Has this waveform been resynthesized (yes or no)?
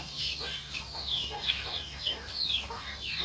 yes